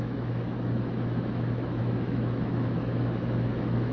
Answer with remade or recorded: remade